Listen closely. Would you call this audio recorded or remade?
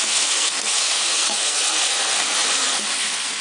remade